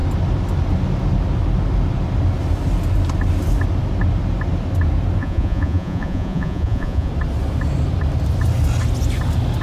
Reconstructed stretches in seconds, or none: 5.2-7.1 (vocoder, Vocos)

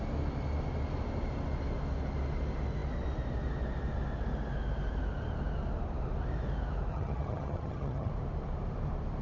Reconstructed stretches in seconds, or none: 6.9-8.1 (vocoder, HiFi-GAN)

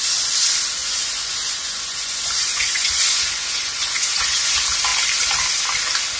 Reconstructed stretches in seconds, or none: 0.8-4.5 (vocoder, Vocos)

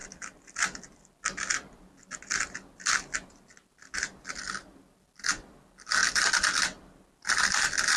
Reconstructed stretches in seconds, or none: none